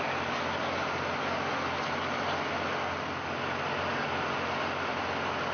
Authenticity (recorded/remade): recorded